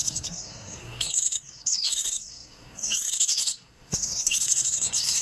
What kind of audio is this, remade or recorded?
remade